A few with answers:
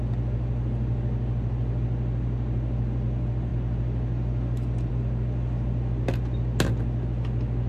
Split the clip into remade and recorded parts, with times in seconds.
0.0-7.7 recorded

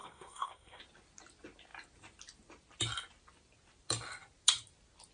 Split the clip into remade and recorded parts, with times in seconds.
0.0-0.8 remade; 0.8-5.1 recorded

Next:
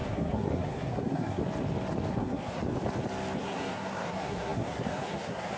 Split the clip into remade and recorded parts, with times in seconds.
0.0-1.4 remade; 1.4-2.1 recorded; 2.1-2.6 remade; 2.6-3.4 recorded; 3.4-5.6 remade

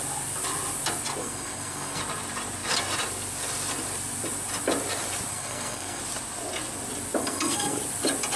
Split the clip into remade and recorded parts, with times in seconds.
0.0-1.2 recorded; 1.2-2.0 remade; 2.0-5.3 recorded; 5.3-6.0 remade; 6.0-7.2 recorded; 7.2-7.8 remade; 7.8-8.4 recorded

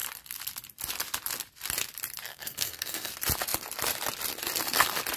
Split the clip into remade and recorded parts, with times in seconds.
0.0-2.3 recorded; 2.3-3.1 remade; 3.1-5.2 recorded

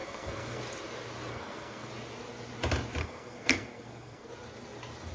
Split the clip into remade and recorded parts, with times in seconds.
0.0-0.6 remade; 0.6-1.3 recorded; 1.3-1.9 remade; 1.9-3.0 recorded; 3.0-4.3 remade; 4.3-5.1 recorded